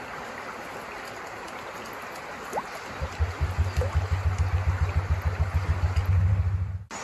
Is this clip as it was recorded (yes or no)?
yes